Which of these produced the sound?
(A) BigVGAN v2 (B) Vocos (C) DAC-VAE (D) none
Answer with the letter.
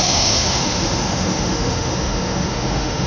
C